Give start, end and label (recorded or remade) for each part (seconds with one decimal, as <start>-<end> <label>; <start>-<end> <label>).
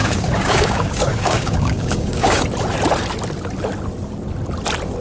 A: 0.0-2.4 remade; 2.4-5.0 recorded